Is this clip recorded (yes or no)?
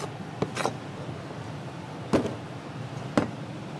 yes